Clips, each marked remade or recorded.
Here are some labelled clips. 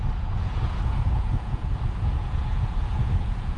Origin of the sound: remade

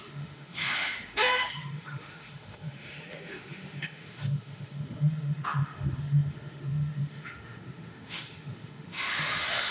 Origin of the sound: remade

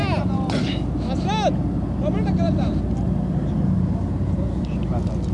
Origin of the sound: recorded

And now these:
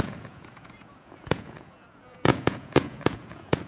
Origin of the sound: remade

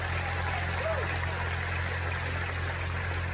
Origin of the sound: recorded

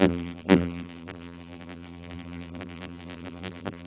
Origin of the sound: remade